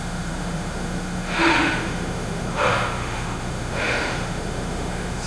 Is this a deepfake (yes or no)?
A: yes